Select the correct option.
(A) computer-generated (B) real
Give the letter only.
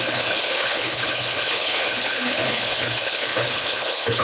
A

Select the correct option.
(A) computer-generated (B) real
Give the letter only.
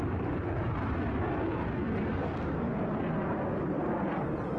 B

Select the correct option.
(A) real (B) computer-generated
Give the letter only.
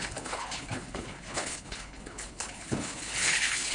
B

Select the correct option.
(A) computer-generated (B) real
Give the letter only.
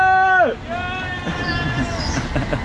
B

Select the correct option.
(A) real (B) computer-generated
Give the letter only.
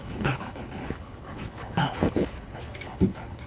B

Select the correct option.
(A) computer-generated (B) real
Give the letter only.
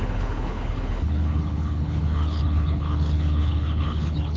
A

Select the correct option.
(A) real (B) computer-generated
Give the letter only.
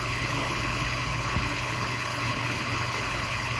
B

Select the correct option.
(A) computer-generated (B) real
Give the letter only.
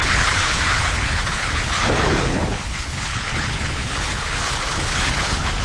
A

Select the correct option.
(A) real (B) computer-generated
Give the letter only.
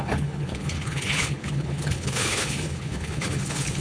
B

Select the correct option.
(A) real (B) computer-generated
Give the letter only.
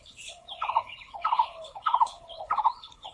B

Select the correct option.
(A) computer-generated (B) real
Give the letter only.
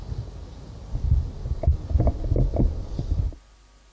B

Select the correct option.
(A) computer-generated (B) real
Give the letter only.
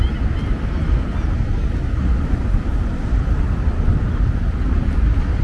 B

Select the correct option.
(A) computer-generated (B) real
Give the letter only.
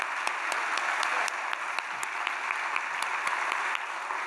B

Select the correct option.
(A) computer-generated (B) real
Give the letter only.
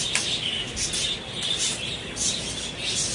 B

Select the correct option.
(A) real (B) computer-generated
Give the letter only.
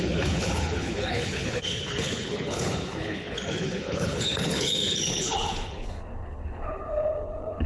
B